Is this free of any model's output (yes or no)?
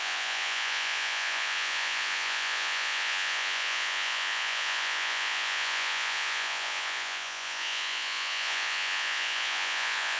no